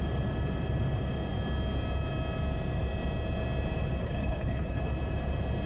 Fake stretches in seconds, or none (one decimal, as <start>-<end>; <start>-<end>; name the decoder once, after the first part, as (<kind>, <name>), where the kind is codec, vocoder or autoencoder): 4.0-4.8 (codec, HILCodec)